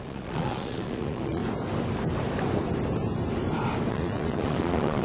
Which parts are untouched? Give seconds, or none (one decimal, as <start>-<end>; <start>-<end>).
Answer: 1.4-3.9